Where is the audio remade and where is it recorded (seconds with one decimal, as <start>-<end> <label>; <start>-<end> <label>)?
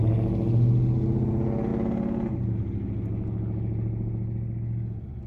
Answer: 0.0-5.3 recorded